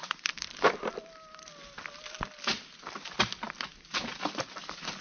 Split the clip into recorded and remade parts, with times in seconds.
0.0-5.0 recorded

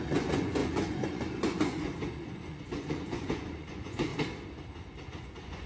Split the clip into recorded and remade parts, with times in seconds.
0.0-4.1 remade; 4.1-5.0 recorded; 5.0-5.7 remade